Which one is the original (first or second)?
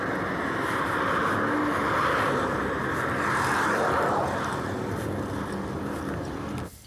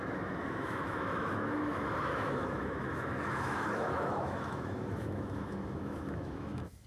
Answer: first